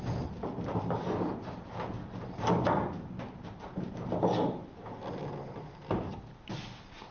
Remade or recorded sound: recorded